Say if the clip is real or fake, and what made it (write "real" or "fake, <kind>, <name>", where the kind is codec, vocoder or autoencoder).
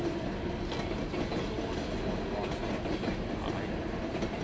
real